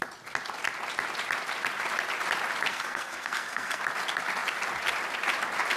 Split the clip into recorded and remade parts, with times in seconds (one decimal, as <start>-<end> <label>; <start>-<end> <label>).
0.0-2.7 recorded; 2.7-3.8 remade; 3.8-5.8 recorded